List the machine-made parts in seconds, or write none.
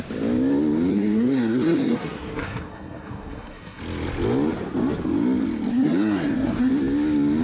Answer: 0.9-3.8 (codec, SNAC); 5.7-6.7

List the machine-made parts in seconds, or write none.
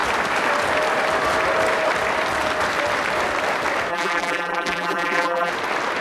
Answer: 3.9-5.5 (vocoder, BigVGAN v2)